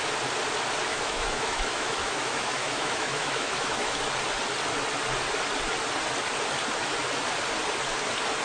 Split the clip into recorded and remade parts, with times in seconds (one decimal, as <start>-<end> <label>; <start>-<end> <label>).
0.0-0.9 recorded; 0.9-4.0 remade; 4.0-8.4 recorded

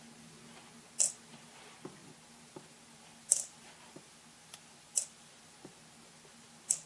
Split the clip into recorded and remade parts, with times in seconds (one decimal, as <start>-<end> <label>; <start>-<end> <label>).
0.0-6.9 recorded

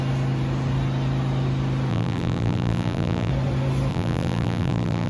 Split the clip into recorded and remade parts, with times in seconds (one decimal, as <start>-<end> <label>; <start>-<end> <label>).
0.0-1.9 recorded; 1.9-3.3 remade; 3.3-3.9 recorded; 3.9-5.1 remade